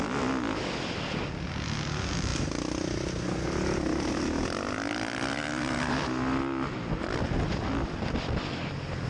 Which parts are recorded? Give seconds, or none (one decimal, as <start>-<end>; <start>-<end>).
0.0-9.1